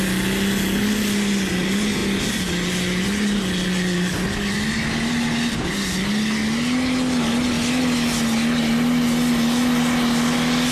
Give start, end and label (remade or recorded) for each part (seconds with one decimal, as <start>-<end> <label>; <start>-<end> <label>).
0.0-10.7 recorded